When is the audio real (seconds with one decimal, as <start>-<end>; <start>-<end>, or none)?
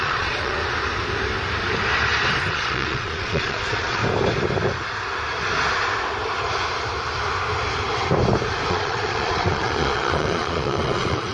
0.6-2.5; 4.0-8.7